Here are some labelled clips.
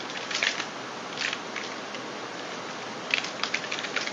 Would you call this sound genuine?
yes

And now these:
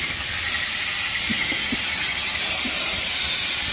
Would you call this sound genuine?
yes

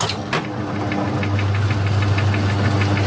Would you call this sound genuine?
yes